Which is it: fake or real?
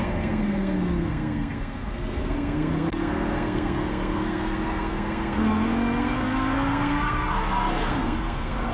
fake